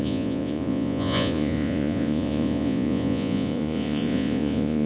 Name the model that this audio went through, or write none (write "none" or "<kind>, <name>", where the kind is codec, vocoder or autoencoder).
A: vocoder, Vocos